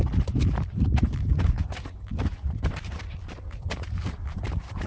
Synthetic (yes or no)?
yes